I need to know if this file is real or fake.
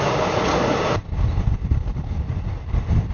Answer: real